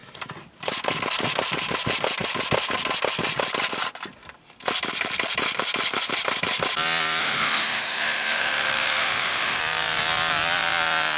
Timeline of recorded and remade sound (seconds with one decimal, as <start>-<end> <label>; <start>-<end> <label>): 0.0-7.2 recorded; 7.2-9.6 remade; 9.6-11.2 recorded